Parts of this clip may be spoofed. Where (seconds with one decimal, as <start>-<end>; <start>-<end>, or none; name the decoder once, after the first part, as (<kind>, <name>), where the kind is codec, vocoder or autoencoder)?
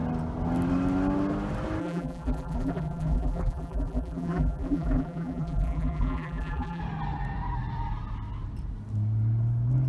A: 1.8-6.8 (vocoder, BigVGAN v2)